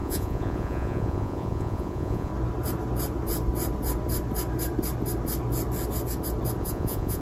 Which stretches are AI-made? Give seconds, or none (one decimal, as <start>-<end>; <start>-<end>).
0.0-2.3; 6.6-7.2

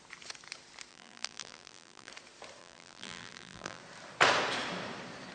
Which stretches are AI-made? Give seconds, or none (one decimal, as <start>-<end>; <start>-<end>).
0.9-2.1; 2.6-3.8

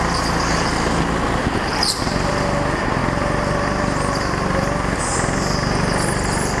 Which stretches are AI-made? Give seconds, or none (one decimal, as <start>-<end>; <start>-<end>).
1.7-2.3

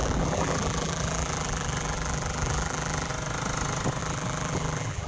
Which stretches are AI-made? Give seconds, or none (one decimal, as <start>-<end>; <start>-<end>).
0.0-3.1; 4.0-5.1

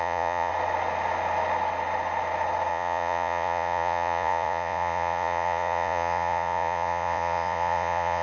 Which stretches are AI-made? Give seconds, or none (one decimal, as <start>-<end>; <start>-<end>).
0.0-0.5; 2.7-8.2